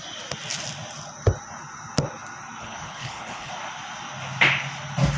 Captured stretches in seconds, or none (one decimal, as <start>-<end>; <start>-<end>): 0.0-2.6; 3.5-5.2